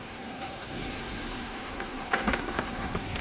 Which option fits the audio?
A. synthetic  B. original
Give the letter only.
A